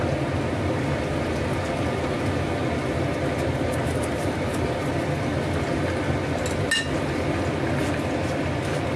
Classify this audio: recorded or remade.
recorded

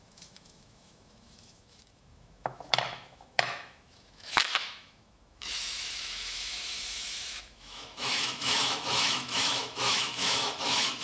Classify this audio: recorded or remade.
remade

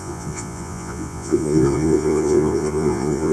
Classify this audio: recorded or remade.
remade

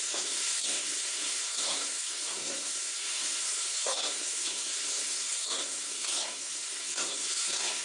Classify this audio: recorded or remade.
remade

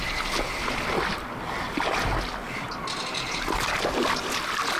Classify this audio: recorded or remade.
recorded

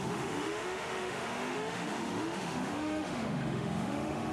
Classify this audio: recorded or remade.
remade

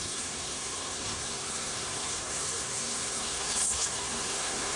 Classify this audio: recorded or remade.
remade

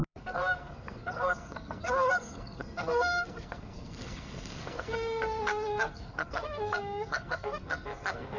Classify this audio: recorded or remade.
remade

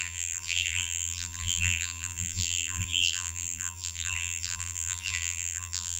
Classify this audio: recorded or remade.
remade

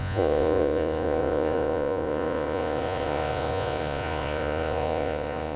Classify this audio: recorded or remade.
remade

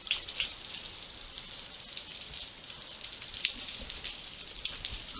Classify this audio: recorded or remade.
remade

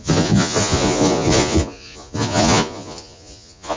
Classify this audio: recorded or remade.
remade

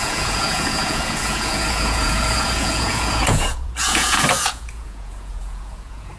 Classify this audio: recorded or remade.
remade